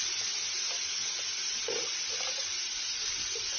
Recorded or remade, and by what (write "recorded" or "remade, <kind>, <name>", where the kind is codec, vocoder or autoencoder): recorded